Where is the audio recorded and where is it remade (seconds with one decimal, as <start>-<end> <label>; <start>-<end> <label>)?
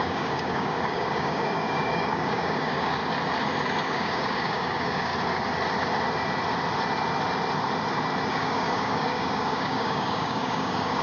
0.0-3.0 remade; 3.0-3.8 recorded; 3.8-5.1 remade; 5.1-8.3 recorded; 8.3-11.0 remade